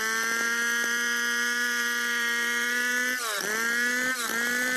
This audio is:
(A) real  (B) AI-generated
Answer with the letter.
B